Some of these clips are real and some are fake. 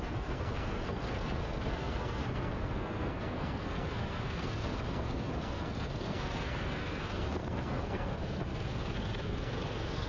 fake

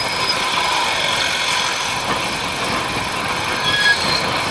real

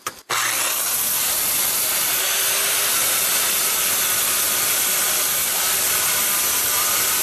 real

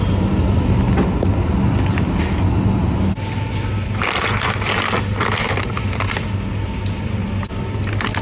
real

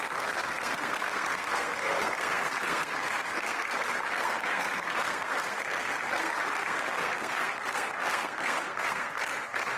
fake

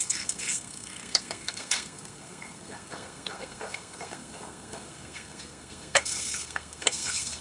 fake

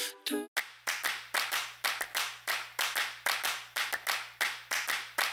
real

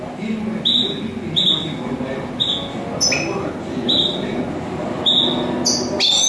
real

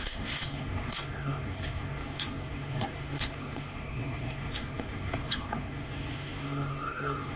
fake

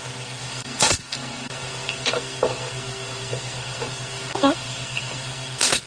fake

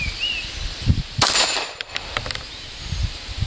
real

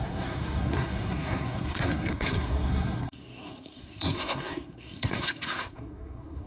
fake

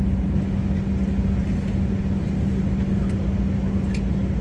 real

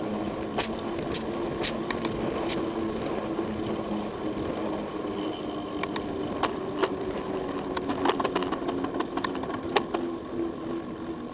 real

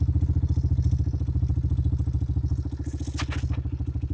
real